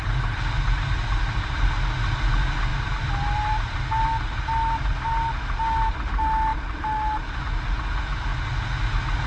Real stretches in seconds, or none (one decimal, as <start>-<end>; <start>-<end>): 0.0-9.3